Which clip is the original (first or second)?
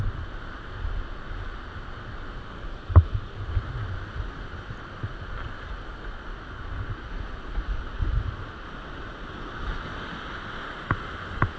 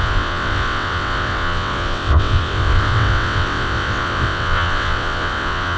first